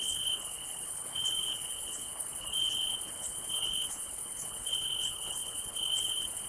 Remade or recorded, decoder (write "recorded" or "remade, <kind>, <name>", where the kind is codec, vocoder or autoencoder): remade, codec, HILCodec